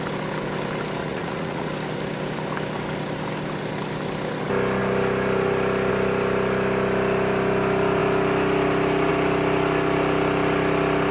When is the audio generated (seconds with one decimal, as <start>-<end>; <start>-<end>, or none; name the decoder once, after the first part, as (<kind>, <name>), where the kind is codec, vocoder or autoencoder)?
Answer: 1.0-1.7 (vocoder, Vocos)

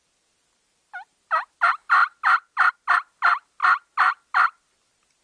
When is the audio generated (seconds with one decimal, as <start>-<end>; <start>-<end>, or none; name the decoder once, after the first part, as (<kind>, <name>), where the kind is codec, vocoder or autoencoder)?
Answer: none

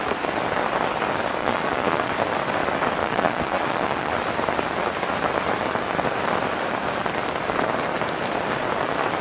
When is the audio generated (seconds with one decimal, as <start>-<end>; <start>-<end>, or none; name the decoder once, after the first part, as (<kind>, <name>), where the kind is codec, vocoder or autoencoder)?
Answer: 1.4-2.1 (vocoder, Vocos); 3.0-4.1

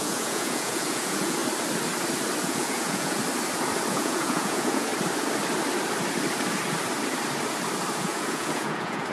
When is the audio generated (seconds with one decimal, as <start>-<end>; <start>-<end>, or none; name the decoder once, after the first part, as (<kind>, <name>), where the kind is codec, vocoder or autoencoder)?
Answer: 0.0-1.4 (vocoder, Vocos); 2.4-3.2; 3.9-4.9; 8.0-9.1